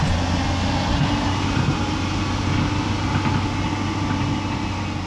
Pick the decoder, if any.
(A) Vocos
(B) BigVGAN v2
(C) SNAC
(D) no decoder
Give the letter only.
D